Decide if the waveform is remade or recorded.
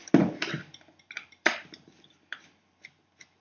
remade